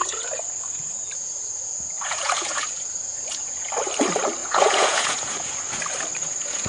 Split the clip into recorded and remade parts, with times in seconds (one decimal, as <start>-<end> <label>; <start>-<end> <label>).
0.0-3.7 remade; 3.7-4.4 recorded; 4.4-5.6 remade; 5.6-6.2 recorded; 6.2-6.7 remade